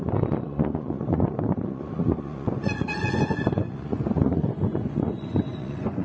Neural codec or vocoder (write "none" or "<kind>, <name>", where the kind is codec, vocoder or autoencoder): vocoder, Vocos